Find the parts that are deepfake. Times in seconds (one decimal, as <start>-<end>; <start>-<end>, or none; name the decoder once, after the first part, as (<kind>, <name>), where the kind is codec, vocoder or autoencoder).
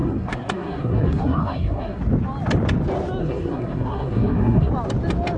0.0-2.0 (codec, SNAC); 3.2-4.7